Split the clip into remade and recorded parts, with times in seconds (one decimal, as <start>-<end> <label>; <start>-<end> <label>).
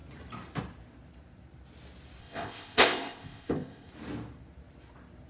0.0-2.2 recorded; 2.2-3.9 remade; 3.9-5.3 recorded